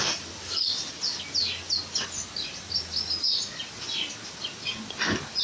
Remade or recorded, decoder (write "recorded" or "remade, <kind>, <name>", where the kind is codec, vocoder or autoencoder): recorded